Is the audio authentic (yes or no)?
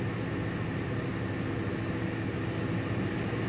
yes